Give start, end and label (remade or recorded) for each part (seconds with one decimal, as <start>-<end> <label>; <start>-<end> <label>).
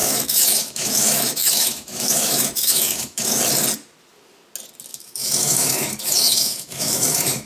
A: 0.0-3.4 remade; 3.4-4.9 recorded; 4.9-7.5 remade